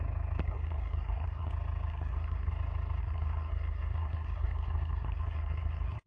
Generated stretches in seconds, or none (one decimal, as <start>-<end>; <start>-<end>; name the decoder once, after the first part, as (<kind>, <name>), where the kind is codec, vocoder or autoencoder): 0.4-1.5 (codec, SNAC); 1.9-2.5; 3.0-6.1